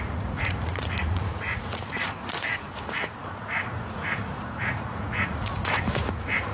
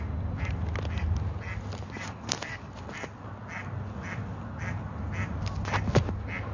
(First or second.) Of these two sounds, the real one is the second